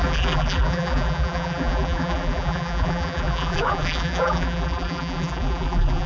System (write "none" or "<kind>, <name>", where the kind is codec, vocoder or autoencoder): vocoder, BigVGAN v2